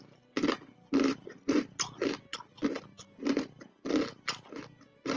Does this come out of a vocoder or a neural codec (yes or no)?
no